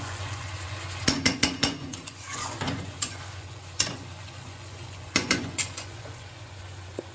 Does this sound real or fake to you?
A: fake